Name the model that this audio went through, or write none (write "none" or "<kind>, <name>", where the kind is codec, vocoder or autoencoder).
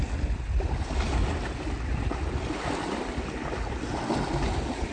none